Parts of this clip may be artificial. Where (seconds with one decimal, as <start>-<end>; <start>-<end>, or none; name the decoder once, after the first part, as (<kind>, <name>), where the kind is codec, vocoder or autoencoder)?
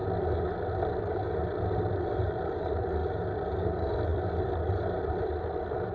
1.9-3.0 (vocoder, BigVGAN v2); 3.6-5.9